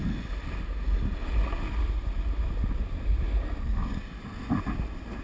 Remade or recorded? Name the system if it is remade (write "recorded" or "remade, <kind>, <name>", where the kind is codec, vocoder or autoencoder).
recorded